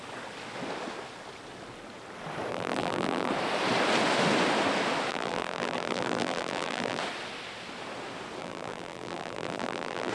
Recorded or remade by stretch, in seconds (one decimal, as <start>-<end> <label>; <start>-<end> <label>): 0.0-2.5 recorded; 2.5-3.3 remade; 3.3-5.1 recorded; 5.1-7.0 remade; 7.0-8.4 recorded; 8.4-10.1 remade